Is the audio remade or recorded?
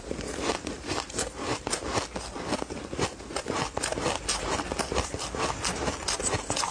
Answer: recorded